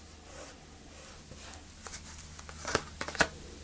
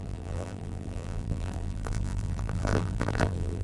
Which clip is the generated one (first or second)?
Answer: second